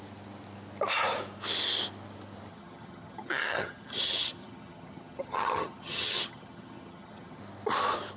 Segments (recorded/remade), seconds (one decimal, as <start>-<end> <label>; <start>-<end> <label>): 0.0-2.5 recorded; 2.5-7.4 remade; 7.4-8.2 recorded